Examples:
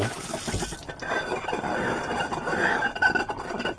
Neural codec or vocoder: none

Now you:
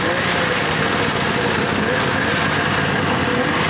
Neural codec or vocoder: none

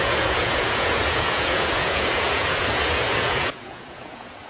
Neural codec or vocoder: vocoder, Vocos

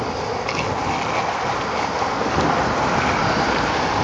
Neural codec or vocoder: none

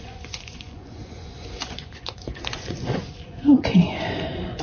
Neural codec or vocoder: vocoder, Vocos